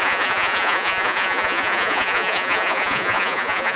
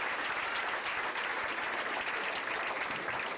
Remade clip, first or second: first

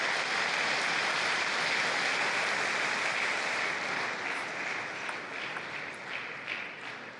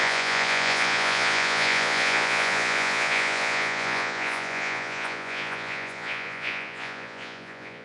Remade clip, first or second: second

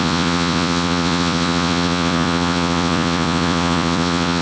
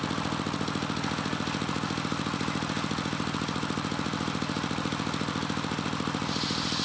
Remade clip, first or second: first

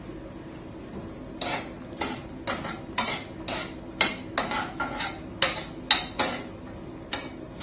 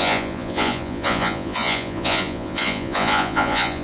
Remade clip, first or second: second